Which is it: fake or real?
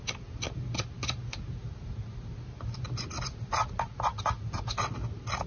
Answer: real